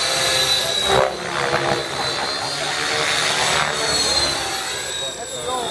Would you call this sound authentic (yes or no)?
yes